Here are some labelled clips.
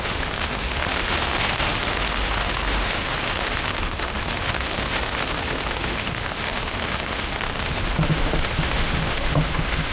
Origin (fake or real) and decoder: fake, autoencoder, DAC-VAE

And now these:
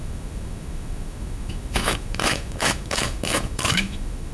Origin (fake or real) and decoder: fake, autoencoder, DAC-VAE